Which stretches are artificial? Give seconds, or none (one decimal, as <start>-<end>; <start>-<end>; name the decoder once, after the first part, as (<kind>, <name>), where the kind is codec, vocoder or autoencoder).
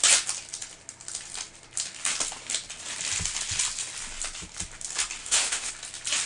5.2-5.7 (autoencoder, DAC-VAE)